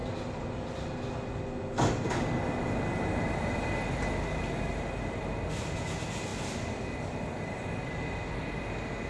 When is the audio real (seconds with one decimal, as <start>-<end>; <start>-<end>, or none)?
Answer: 0.0-9.1